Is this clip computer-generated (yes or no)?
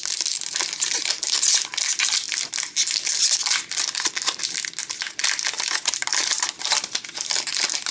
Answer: no